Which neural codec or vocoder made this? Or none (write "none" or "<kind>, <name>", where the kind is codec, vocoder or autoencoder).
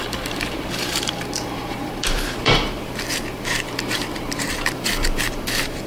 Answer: vocoder, BigVGAN v2